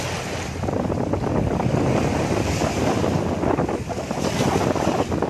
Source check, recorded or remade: recorded